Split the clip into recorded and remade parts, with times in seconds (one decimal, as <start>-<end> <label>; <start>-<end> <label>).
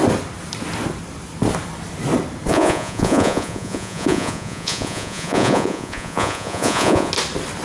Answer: 0.0-2.5 recorded; 2.5-7.1 remade; 7.1-7.6 recorded